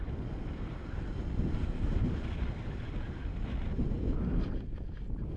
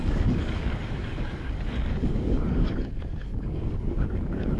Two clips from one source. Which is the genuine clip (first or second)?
first